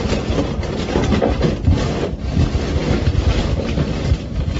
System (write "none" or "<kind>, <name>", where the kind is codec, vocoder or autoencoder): none